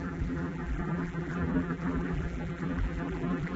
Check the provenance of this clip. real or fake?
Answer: fake